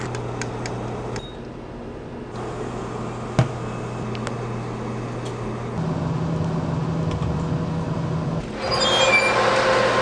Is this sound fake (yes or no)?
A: no